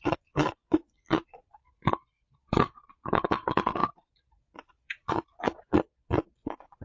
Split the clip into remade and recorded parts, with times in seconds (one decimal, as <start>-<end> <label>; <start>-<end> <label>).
0.0-6.8 remade